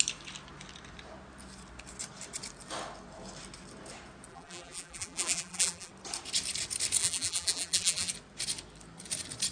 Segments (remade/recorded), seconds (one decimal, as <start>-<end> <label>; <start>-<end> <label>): 0.0-4.3 recorded; 4.3-5.9 remade; 5.9-7.0 recorded; 7.0-8.1 remade; 8.1-9.5 recorded